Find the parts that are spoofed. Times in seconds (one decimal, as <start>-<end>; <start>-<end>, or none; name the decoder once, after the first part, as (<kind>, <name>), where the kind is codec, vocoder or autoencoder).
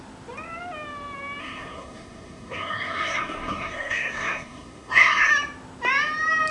1.4-5.3 (codec, SNAC)